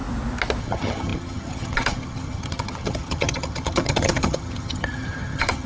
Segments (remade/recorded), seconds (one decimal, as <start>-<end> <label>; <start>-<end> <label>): 0.0-0.6 recorded; 0.6-5.7 remade